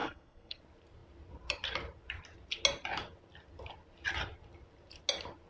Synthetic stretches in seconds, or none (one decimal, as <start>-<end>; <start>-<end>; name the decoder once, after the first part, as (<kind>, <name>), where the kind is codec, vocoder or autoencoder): 0.0-0.6 (codec, SNAC)